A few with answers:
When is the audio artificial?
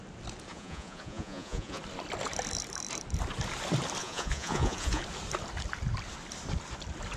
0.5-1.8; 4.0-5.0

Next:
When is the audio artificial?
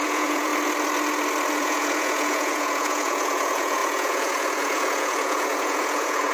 0.0-0.5; 1.5-6.3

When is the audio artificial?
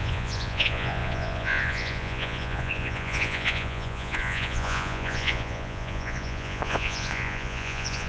0.0-8.1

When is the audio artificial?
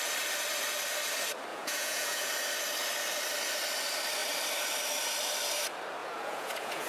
1.5-2.3; 6.0-6.9